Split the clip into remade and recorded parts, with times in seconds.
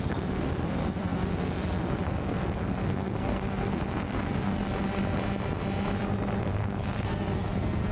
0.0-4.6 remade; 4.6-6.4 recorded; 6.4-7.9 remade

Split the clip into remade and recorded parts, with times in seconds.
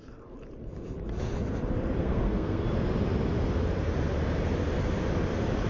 0.0-2.0 recorded; 2.0-2.6 remade; 2.6-5.7 recorded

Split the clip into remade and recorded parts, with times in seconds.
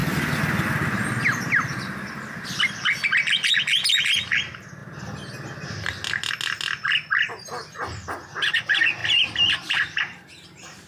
0.0-9.0 recorded; 9.0-10.9 remade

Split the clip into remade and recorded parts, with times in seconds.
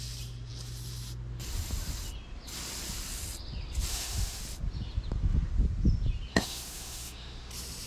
0.0-3.9 recorded; 3.9-4.4 remade; 4.4-6.3 recorded; 6.3-7.5 remade; 7.5-7.9 recorded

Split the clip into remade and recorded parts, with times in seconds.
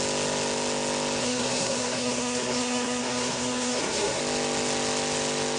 0.0-1.2 recorded; 1.2-4.2 remade; 4.2-5.6 recorded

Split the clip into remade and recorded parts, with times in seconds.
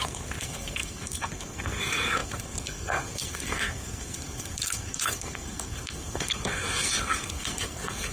0.0-8.1 remade